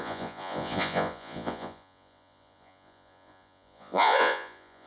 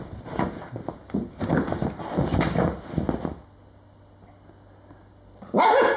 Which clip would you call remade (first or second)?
first